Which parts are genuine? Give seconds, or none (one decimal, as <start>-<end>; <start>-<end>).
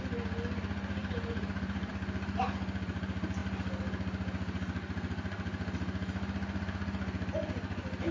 0.0-1.0; 1.9-8.1